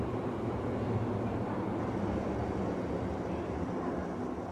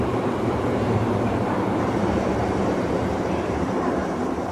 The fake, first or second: second